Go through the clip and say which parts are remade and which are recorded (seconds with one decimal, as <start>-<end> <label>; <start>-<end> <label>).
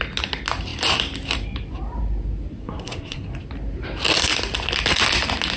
0.0-2.6 recorded; 2.6-3.3 remade; 3.3-5.6 recorded